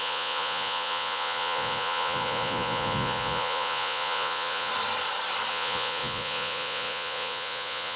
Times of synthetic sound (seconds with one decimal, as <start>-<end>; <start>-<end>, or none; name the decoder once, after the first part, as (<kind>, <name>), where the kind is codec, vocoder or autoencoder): 0.0-4.7 (vocoder, Vocos); 5.5-8.0